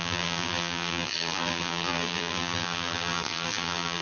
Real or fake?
fake